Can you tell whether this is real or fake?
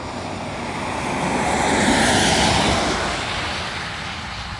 real